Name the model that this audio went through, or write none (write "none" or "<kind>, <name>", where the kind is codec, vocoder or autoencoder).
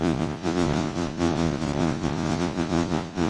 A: vocoder, Vocos